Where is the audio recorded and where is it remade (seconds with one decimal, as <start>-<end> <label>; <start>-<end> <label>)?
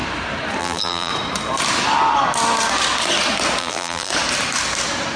0.0-0.6 recorded; 0.6-1.1 remade; 1.1-3.6 recorded; 3.6-4.1 remade; 4.1-5.2 recorded